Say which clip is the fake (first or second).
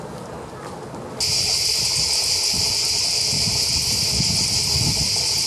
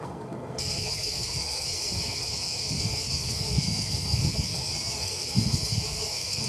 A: second